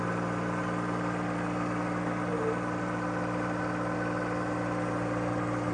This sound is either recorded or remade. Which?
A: recorded